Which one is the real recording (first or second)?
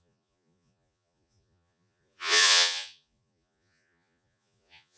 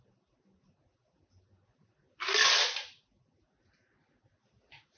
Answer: second